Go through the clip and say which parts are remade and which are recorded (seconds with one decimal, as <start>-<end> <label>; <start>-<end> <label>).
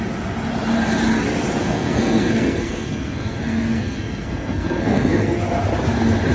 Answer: 0.0-1.6 recorded; 1.6-5.4 remade; 5.4-6.3 recorded